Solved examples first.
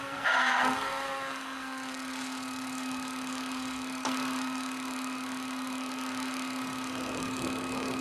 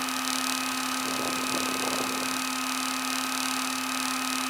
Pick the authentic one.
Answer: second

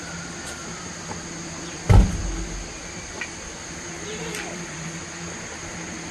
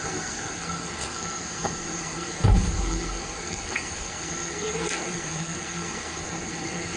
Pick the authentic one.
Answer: first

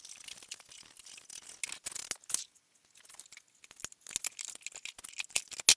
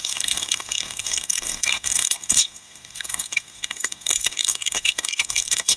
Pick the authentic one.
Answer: first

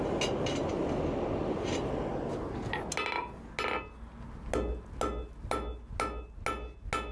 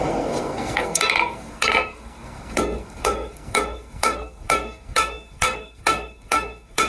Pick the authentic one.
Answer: first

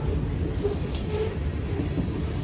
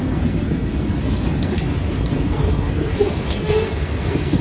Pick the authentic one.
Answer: first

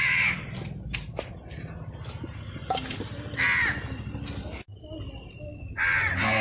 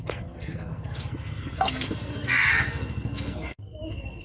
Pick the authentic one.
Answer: first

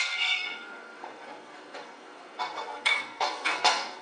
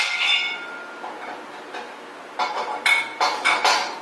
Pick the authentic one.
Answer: second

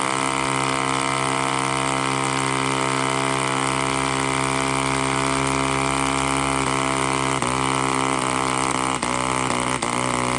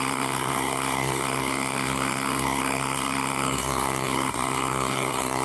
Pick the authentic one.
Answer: first